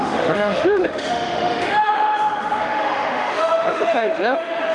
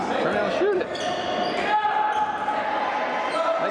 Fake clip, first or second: first